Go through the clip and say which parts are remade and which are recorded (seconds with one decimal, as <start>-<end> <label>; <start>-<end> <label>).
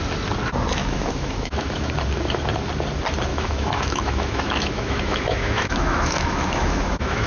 0.0-0.8 recorded; 0.8-1.9 remade; 1.9-3.3 recorded; 3.3-7.3 remade